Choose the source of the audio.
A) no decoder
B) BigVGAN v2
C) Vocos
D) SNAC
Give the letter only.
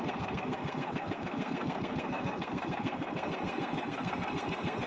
D